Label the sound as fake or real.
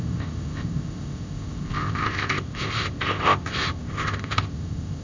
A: fake